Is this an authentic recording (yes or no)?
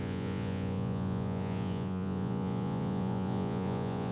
no